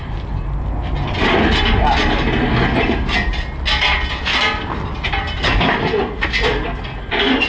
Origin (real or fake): real